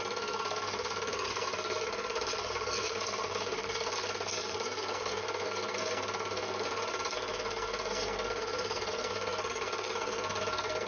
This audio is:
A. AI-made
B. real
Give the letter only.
A